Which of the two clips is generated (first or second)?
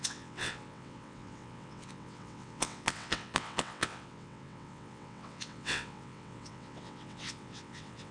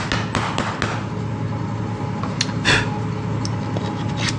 first